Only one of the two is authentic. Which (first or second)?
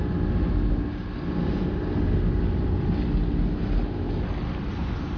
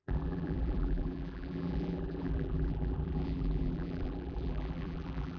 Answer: first